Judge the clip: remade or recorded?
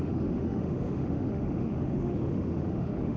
remade